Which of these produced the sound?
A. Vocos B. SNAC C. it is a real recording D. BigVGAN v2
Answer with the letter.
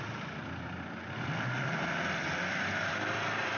D